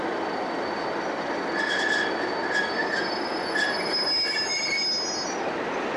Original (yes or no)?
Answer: yes